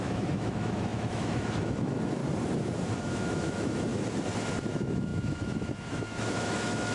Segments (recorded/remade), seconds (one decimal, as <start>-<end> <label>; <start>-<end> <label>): 0.0-2.2 remade; 2.2-3.0 recorded; 3.0-3.9 remade; 3.9-4.5 recorded; 4.5-6.9 remade